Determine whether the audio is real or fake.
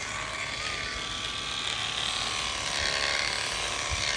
real